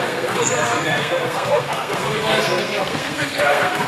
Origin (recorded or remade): remade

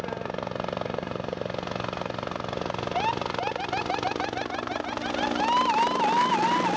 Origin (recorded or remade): recorded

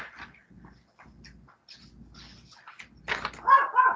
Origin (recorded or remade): recorded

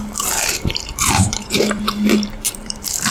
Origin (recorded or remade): remade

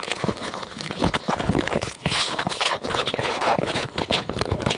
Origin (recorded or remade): remade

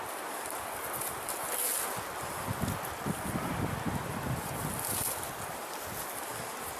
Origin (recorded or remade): recorded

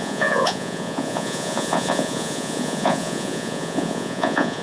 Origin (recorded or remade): remade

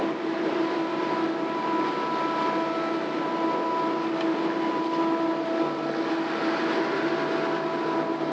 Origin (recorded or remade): recorded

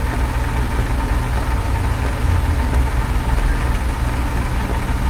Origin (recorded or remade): recorded